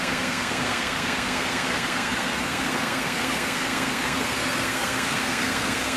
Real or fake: fake